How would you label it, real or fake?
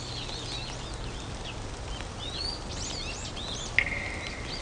real